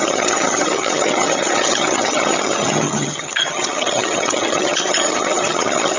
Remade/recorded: remade